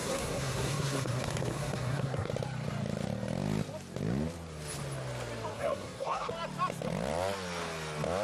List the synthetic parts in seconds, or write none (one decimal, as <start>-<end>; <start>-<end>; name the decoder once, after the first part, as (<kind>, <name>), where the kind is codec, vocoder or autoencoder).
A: 0.0-2.3 (codec, SNAC); 5.5-6.3